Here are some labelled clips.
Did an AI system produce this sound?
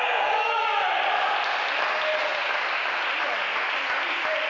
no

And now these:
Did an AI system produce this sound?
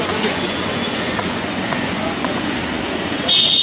yes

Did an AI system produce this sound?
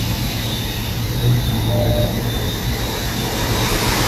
no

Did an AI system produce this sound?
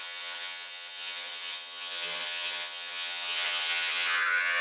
yes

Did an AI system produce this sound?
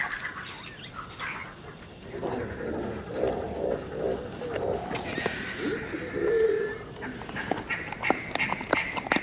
no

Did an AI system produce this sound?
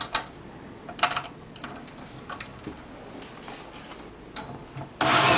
no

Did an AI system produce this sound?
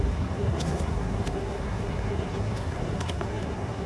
yes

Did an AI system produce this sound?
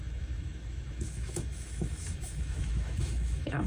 yes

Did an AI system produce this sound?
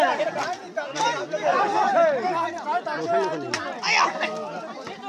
no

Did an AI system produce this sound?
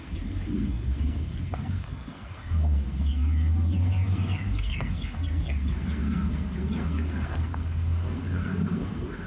yes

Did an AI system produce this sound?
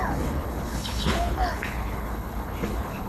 yes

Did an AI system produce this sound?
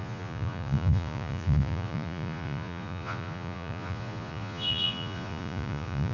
yes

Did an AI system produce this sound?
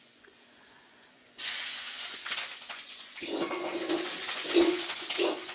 yes